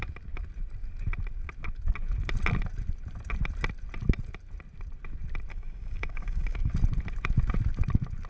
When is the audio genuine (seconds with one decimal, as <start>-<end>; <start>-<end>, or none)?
0.0-5.5; 6.7-8.3